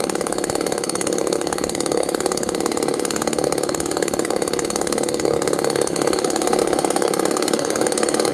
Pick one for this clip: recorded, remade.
remade